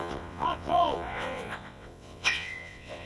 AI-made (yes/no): yes